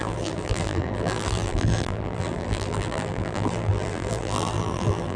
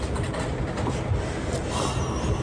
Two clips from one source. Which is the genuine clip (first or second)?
second